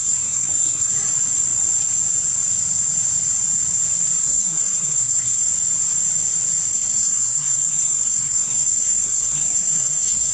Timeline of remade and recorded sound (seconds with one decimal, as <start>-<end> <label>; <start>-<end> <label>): 0.0-0.9 remade; 0.9-4.2 recorded; 4.2-5.5 remade; 5.5-6.7 recorded; 6.7-10.3 remade